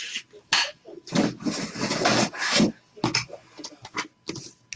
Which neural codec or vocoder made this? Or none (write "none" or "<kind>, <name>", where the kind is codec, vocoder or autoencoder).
none